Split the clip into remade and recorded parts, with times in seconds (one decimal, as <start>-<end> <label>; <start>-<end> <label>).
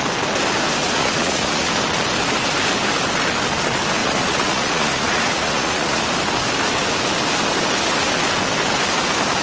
0.0-0.8 recorded; 0.8-1.7 remade; 1.7-4.0 recorded; 4.0-6.0 remade; 6.0-9.4 recorded